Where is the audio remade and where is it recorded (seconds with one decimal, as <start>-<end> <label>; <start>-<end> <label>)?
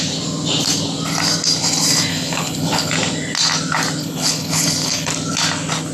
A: 0.0-2.1 recorded; 2.1-2.9 remade; 2.9-4.0 recorded; 4.0-5.1 remade; 5.1-5.9 recorded